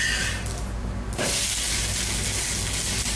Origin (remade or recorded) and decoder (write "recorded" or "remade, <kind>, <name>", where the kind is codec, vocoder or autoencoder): recorded